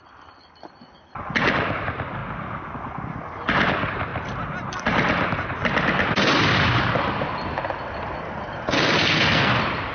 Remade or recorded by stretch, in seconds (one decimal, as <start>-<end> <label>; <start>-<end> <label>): 0.0-9.0 recorded; 9.0-9.5 remade; 9.5-9.9 recorded